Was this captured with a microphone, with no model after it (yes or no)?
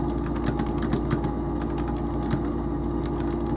yes